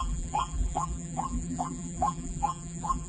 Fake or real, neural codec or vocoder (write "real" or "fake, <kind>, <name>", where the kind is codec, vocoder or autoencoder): fake, vocoder, BigVGAN v2